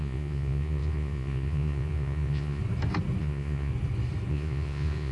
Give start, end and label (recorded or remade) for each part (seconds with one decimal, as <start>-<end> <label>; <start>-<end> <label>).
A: 0.0-2.6 remade; 2.6-3.2 recorded; 3.2-3.7 remade; 3.7-4.3 recorded; 4.3-5.1 remade